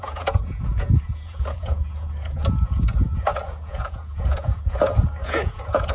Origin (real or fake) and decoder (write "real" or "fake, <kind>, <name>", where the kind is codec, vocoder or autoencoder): fake, vocoder, Vocos